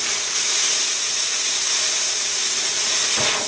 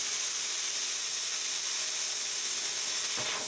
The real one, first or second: second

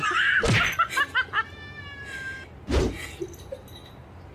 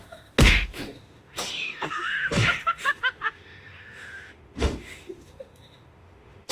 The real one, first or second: first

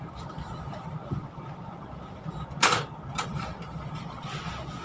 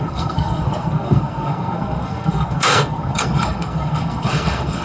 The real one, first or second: first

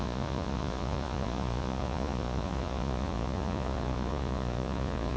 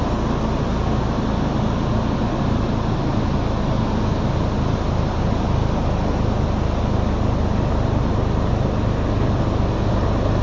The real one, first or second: second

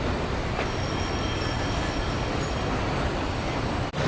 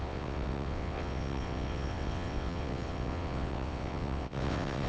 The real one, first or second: first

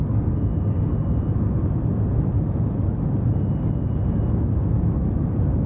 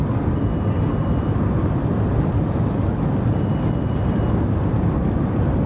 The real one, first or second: first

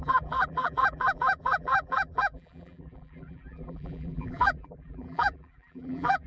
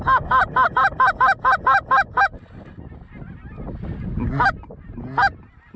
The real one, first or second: second